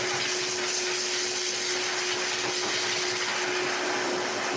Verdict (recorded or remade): recorded